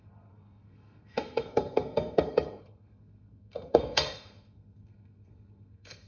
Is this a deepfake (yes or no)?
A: yes